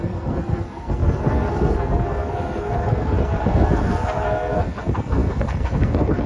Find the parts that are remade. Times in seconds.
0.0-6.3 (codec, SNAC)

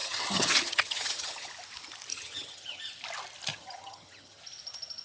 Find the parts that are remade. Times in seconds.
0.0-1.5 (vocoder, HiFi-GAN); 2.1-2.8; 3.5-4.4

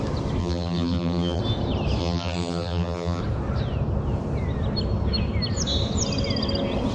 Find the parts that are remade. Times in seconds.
0.4-1.4 (vocoder, BigVGAN v2); 2.0-3.2